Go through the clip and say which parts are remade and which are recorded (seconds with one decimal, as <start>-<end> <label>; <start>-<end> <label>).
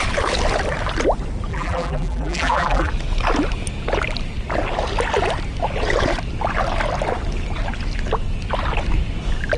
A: 0.0-1.5 recorded; 1.5-2.9 remade; 2.9-9.6 recorded